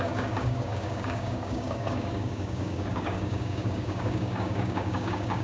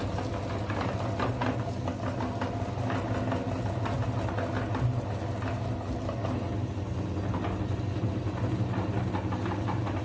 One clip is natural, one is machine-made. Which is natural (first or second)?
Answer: second